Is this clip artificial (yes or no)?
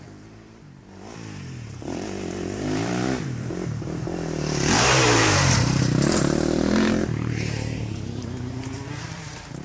yes